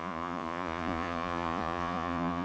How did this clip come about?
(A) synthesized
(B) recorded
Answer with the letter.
A